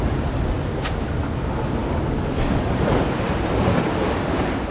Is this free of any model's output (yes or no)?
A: yes